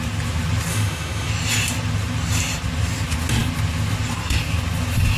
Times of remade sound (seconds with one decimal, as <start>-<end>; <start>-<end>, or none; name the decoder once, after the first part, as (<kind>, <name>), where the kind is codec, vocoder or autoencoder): 0.7-1.3 (autoencoder, DAC-VAE)

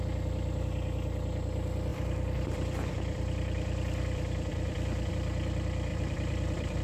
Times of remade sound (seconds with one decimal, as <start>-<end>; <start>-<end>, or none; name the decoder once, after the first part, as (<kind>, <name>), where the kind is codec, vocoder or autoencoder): 1.9-5.1 (vocoder, BigVGAN v2); 5.9-6.8

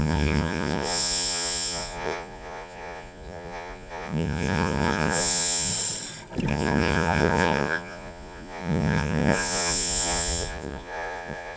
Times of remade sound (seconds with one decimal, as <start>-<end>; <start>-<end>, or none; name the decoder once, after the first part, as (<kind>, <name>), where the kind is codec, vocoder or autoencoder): 0.0-5.7 (vocoder, Vocos); 6.5-11.6

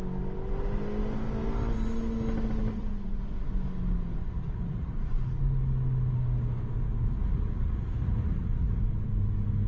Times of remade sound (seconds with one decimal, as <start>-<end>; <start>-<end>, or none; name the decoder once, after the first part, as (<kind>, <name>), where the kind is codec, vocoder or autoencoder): 2.7-3.2 (vocoder, Vocos); 4.2-5.4; 7.2-8.8